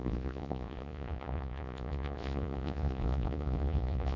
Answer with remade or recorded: remade